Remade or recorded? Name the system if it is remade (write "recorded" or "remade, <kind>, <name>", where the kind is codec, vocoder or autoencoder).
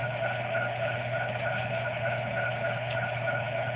remade, codec, HILCodec